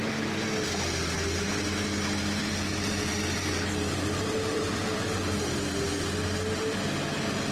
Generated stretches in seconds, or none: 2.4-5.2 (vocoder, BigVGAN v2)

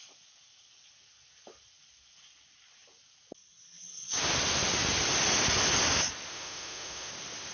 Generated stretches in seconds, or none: 6.3-7.1 (autoencoder, DAC-VAE)

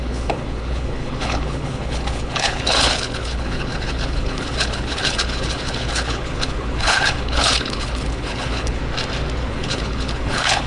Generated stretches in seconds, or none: 0.0-8.8 (codec, HILCodec); 9.5-10.7

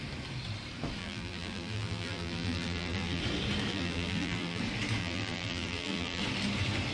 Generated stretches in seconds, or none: 1.0-3.2 (vocoder, BigVGAN v2); 3.7-4.6; 5.0-6.2

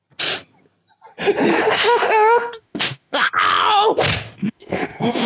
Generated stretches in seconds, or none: 1.5-3.3 (autoencoder, DAC-VAE); 4.4-5.3

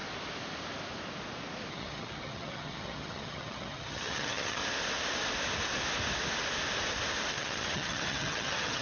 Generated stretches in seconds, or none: 1.7-4.6 (vocoder, HiFi-GAN); 7.3-8.8